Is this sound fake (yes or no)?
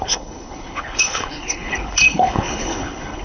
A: yes